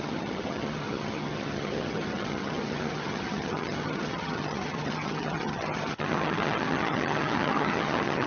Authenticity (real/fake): fake